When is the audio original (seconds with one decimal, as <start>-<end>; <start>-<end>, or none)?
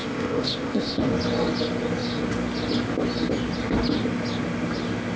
1.1-5.2